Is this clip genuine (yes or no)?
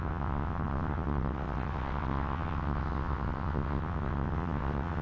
no